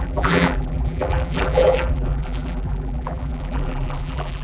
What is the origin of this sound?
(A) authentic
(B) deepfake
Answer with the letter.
B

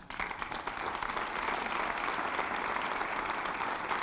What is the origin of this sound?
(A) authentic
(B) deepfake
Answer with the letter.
A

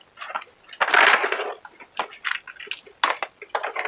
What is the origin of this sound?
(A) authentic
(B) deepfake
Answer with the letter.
A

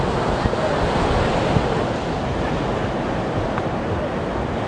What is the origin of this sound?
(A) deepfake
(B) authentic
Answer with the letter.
B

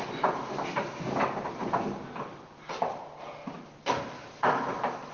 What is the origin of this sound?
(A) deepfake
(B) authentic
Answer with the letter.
A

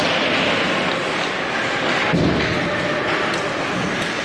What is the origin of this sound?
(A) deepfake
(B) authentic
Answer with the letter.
B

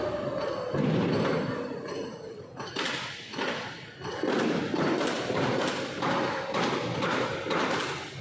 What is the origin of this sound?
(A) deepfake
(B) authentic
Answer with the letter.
B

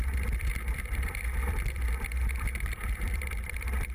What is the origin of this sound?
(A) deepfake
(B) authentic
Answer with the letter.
A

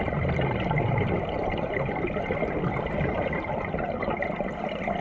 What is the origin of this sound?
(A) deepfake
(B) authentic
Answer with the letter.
B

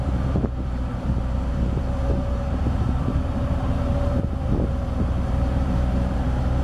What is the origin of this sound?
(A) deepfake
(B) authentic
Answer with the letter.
A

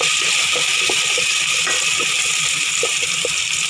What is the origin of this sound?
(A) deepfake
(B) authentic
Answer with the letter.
B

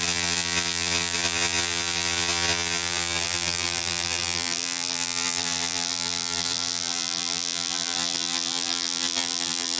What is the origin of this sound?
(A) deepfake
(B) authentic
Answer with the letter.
A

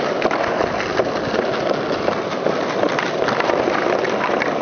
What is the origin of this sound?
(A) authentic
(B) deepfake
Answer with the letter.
A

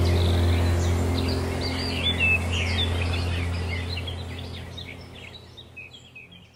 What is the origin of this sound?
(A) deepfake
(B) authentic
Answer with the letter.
B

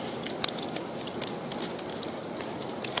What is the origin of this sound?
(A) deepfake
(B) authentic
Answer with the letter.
B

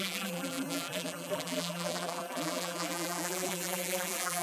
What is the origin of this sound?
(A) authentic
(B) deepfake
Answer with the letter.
B